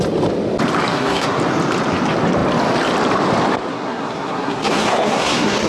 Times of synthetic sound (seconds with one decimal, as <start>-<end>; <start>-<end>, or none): 0.9-1.4; 3.7-5.7

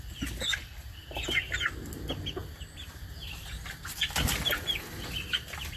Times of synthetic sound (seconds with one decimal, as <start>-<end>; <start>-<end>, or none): none

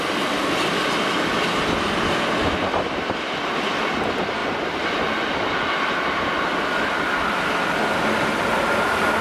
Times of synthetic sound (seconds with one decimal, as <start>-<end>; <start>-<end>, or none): none

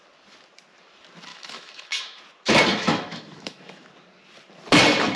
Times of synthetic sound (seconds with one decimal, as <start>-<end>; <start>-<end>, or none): 1.3-2.2; 2.7-3.9

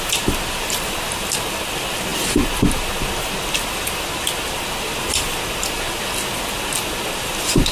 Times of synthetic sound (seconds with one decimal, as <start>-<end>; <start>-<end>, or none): none

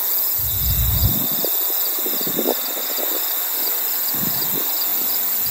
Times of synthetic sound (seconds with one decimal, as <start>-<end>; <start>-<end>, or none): none